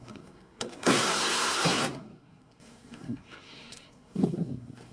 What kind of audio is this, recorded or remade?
remade